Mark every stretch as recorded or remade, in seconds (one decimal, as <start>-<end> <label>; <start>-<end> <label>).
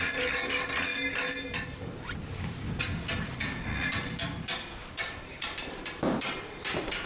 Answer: 0.0-4.8 recorded; 4.8-6.3 remade; 6.3-7.1 recorded